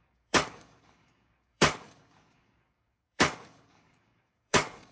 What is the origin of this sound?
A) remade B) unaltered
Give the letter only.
A